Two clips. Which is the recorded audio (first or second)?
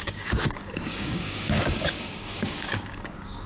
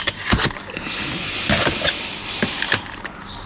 second